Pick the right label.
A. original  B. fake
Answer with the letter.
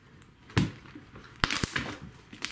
A